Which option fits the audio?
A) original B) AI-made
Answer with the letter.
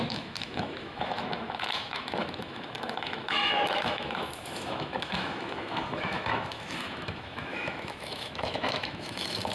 B